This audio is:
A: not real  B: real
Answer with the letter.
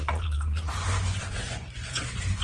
A